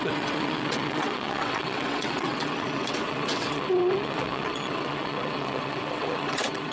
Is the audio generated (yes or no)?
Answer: yes